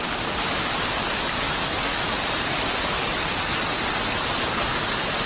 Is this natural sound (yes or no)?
yes